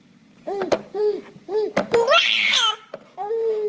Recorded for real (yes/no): no